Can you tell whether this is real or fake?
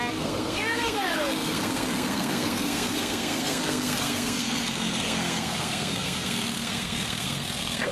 fake